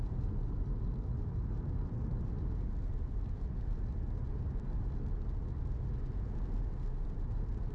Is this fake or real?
real